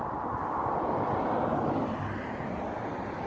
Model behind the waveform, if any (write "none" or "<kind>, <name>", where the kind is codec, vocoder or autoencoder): none